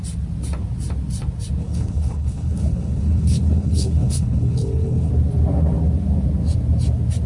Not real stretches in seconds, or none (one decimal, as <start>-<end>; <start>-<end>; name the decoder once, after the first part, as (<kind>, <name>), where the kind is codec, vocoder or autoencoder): 1.6-5.1 (codec, HILCodec)